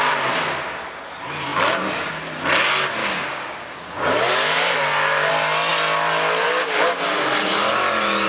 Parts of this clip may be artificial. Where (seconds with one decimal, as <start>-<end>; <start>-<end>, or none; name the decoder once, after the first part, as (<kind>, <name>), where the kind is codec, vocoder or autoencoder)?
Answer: 3.0-5.3 (codec, DAC)